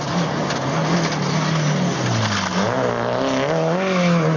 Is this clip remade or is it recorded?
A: recorded